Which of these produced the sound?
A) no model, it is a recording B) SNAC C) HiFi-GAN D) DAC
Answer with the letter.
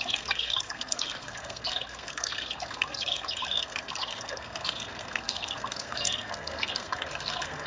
B